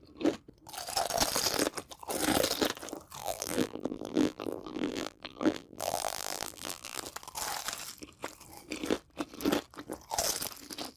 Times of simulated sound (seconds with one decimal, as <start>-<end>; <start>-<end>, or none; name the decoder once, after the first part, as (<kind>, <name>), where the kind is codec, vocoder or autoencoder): 3.2-7.0 (vocoder, BigVGAN v2)